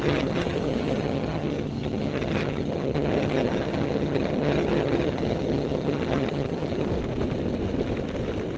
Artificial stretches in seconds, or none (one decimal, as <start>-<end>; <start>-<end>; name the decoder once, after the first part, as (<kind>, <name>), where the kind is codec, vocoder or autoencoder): 0.0-6.9 (vocoder, HiFi-GAN)